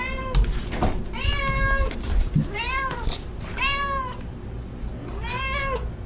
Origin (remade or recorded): recorded